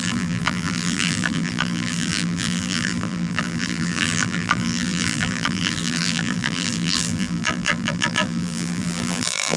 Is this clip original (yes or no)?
no